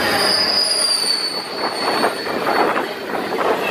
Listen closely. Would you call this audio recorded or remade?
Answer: recorded